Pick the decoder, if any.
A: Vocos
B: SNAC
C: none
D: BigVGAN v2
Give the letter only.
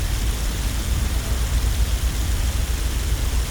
C